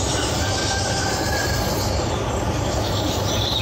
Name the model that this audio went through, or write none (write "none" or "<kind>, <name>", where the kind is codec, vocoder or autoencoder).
none